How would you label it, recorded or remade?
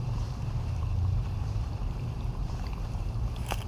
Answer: remade